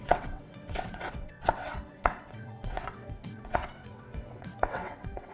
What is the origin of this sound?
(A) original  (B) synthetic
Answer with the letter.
B